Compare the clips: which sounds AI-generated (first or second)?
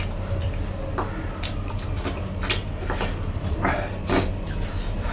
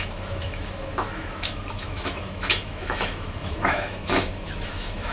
second